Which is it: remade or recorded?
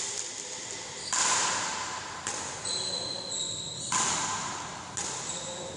recorded